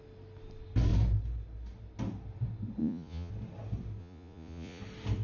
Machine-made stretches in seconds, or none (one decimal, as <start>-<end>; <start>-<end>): 2.8-3.3; 4.0-4.8